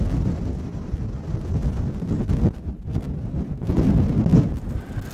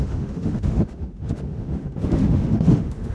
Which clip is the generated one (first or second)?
second